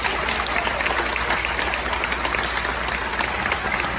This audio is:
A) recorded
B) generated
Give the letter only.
A